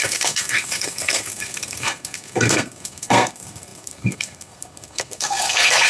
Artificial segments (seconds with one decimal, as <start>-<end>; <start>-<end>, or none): 0.0-5.9